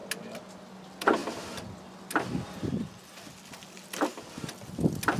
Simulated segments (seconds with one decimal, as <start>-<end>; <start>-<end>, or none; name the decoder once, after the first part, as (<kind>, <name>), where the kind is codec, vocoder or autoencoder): none